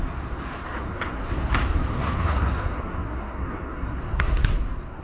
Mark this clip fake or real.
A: fake